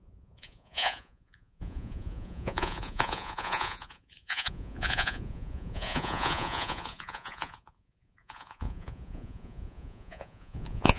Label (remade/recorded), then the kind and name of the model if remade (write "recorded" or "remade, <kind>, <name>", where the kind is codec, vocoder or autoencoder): remade, vocoder, Vocos